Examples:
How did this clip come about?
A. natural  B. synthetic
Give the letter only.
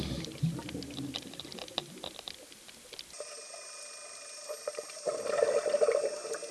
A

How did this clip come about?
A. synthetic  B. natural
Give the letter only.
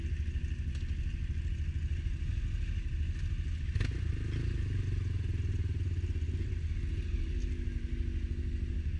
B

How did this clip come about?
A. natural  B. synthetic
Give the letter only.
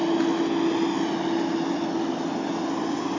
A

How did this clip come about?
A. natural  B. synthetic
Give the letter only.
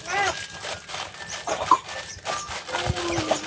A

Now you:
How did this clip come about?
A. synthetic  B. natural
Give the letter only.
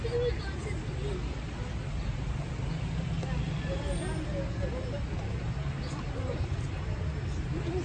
B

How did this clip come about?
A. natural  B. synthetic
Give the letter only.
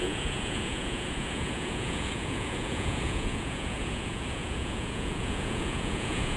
B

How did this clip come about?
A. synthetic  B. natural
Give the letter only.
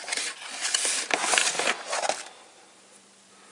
B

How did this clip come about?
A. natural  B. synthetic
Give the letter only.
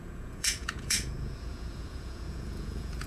B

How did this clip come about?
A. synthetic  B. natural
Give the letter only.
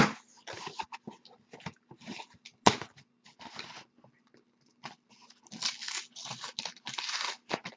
B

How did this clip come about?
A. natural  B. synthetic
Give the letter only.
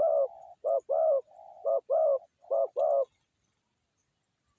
A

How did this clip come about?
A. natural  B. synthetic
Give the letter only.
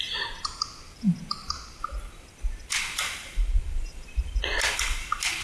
A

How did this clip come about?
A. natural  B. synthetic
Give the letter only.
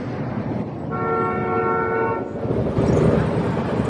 A